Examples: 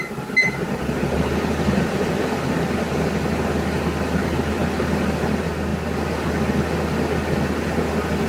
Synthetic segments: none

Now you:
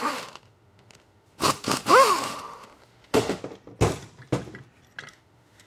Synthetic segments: 0.0-3.4 (autoencoder, DAC-VAE); 5.1-5.7

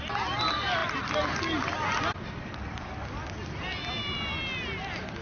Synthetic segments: none

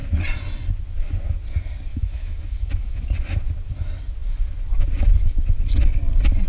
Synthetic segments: 1.9-3.0 (autoencoder, DAC-VAE)

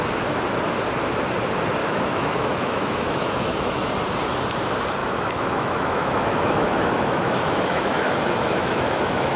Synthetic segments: 1.8-3.9 (autoencoder, DAC-VAE); 5.0-9.4

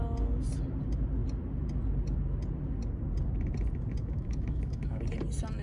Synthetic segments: 4.0-5.0 (autoencoder, DAC-VAE)